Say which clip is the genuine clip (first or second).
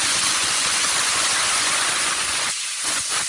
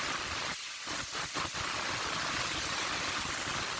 second